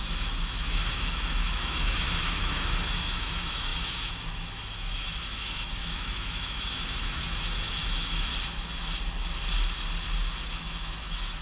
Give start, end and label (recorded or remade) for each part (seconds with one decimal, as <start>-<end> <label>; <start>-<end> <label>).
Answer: 0.0-8.3 remade; 8.3-10.6 recorded; 10.6-11.4 remade